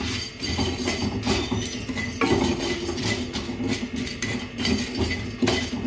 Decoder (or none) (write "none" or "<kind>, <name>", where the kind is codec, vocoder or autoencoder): none